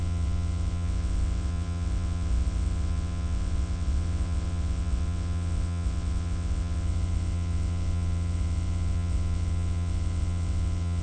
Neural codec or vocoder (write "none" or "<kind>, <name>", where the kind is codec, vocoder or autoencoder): vocoder, WaveNeXt